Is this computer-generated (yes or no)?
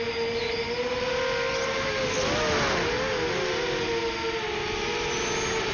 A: no